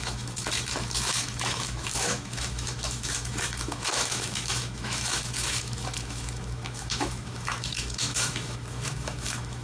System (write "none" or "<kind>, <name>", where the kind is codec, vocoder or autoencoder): autoencoder, DAC-VAE